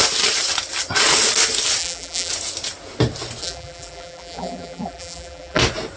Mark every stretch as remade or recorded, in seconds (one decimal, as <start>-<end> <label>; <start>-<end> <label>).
0.0-1.8 recorded; 1.8-2.3 remade; 2.3-3.4 recorded; 3.4-5.6 remade; 5.6-6.0 recorded

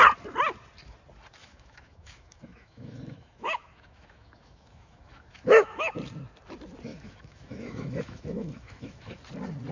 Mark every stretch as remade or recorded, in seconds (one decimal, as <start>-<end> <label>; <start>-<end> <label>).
0.0-1.4 recorded; 1.4-5.8 remade; 5.8-6.9 recorded; 6.9-9.2 remade; 9.2-9.7 recorded

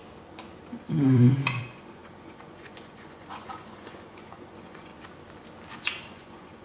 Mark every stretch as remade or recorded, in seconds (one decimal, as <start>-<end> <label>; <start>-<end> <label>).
0.0-0.8 recorded; 0.8-4.9 remade; 4.9-5.7 recorded; 5.7-6.6 remade

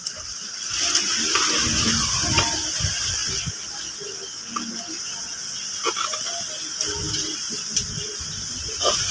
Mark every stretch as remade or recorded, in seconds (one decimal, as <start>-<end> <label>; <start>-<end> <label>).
0.0-9.1 recorded

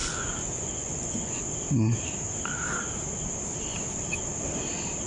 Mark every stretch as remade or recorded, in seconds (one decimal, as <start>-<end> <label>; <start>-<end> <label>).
0.0-1.4 remade; 1.4-5.1 recorded